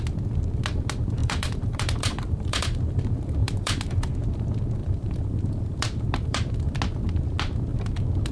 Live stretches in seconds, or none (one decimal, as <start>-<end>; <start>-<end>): 0.0-1.2; 3.0-3.4; 4.1-4.8; 6.8-8.3

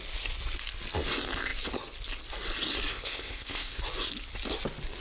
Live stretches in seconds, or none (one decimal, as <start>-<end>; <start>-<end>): 0.0-2.9; 3.8-5.0

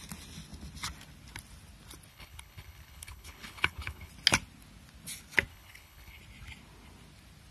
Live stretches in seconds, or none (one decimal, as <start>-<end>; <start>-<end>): 0.0-2.1; 4.1-5.5; 6.2-7.5